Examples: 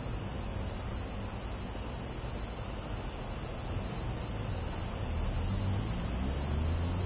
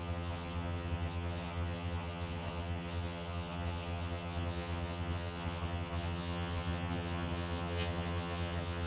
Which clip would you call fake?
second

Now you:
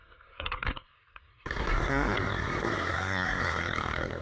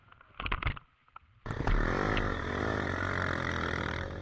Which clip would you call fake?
first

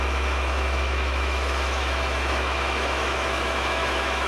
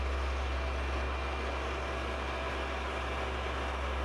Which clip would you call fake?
first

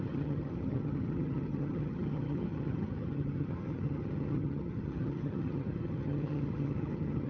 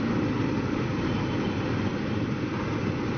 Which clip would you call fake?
first